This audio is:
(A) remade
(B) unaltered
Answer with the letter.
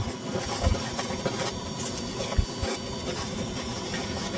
B